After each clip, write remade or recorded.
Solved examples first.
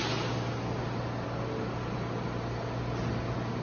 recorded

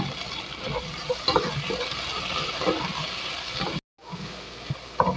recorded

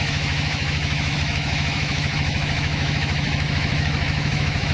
remade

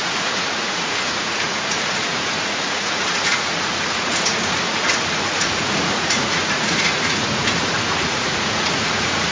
remade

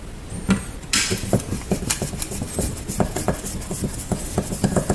recorded